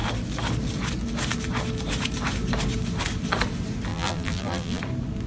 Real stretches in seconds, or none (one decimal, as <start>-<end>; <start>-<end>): 0.0-3.9; 4.8-5.3